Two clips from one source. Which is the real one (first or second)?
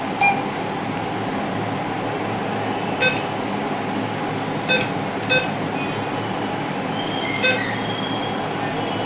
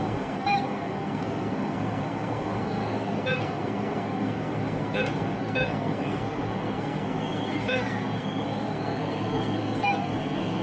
first